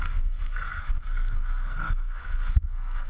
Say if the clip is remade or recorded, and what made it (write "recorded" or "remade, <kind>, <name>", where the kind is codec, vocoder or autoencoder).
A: remade, codec, SNAC